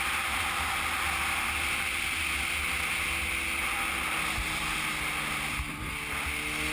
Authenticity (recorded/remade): recorded